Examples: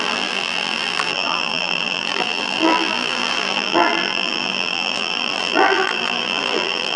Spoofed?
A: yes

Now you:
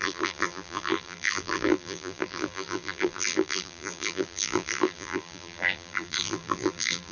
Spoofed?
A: yes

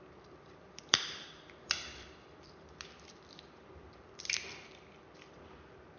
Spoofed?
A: yes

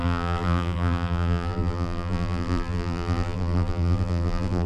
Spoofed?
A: yes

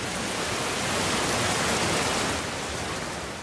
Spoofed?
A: no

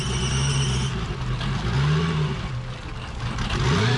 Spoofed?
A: no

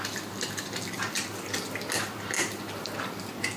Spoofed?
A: yes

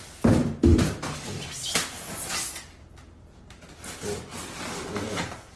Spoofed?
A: yes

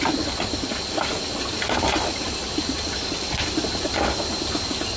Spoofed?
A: no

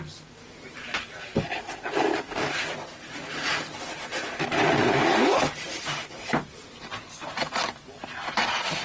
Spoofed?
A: yes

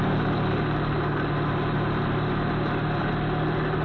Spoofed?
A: no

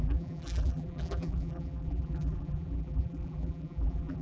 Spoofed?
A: yes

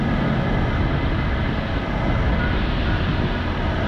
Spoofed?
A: no